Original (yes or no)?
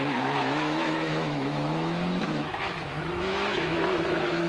no